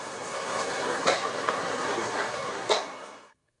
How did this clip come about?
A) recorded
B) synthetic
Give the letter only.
B